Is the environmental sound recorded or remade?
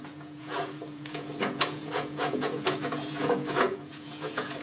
remade